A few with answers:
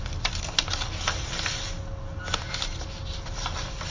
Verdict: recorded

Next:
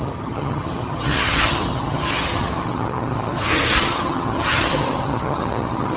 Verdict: remade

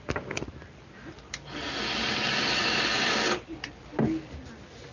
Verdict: recorded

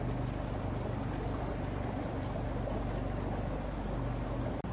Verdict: recorded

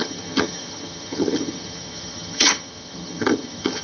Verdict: remade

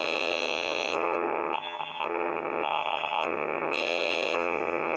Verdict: remade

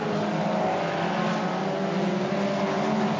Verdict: recorded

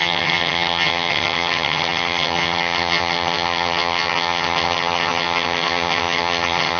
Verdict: remade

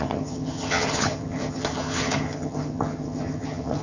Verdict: remade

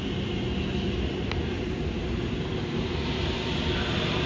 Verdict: recorded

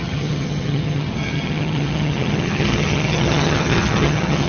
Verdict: remade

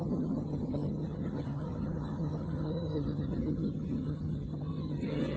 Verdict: remade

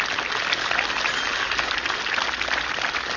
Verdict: recorded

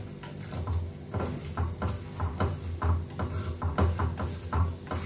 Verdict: recorded